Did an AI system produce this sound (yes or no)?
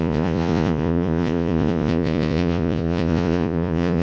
yes